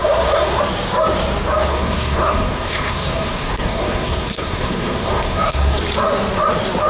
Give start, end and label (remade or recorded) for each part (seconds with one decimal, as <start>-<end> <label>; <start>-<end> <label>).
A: 0.0-0.6 remade; 0.6-1.7 recorded; 1.7-5.8 remade; 5.8-6.9 recorded